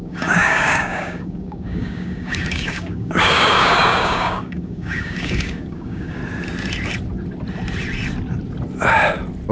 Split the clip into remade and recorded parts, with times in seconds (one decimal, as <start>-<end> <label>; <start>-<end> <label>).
0.0-6.2 remade; 6.2-9.5 recorded